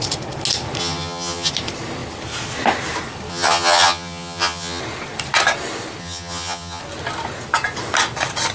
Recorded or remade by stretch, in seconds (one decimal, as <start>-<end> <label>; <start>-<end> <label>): 0.0-0.8 recorded; 0.8-1.5 remade; 1.5-3.3 recorded; 3.3-4.8 remade; 4.8-6.0 recorded; 6.0-6.8 remade; 6.8-8.5 recorded